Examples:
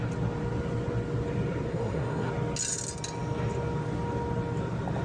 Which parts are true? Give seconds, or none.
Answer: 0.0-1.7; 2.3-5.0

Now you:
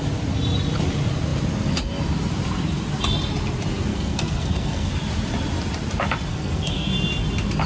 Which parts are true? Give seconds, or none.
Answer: 0.0-3.9; 4.9-6.3; 6.9-7.7